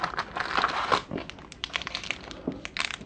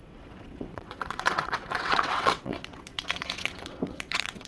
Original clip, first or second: first